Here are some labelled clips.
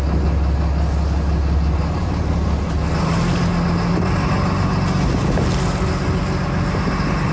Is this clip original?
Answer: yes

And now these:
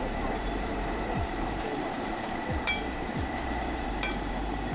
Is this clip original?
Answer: no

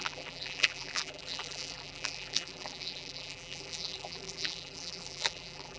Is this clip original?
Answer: no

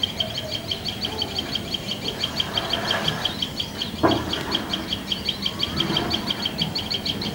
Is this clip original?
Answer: yes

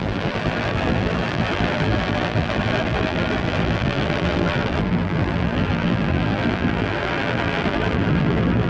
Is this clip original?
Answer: no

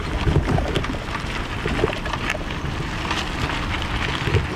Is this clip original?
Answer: yes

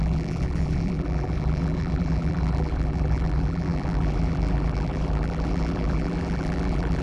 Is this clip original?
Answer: no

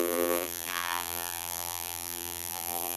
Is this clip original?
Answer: no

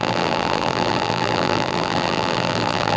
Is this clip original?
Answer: no